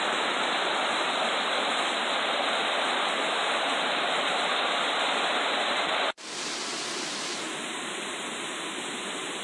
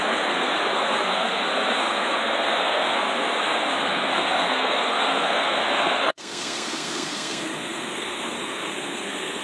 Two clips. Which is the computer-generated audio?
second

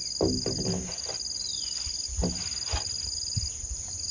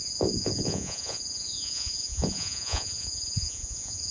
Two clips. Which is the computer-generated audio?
second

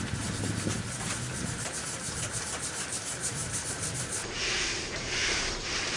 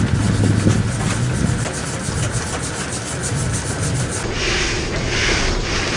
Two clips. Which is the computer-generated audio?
first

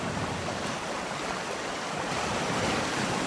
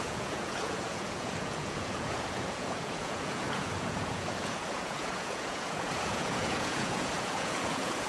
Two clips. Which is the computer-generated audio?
second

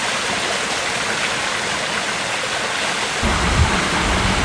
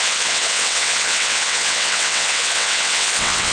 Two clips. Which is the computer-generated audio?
second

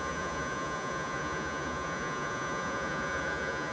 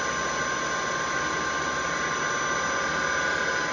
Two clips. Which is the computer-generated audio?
first